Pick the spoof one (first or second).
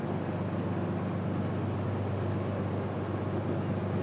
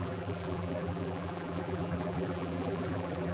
second